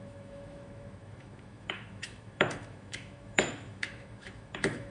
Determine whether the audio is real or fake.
fake